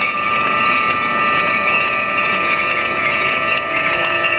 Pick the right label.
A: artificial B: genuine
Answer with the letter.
A